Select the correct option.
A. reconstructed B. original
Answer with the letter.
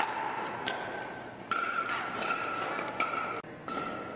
B